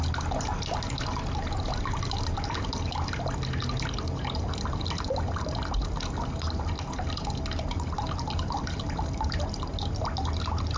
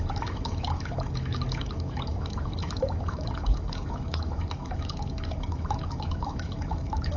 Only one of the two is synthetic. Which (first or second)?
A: second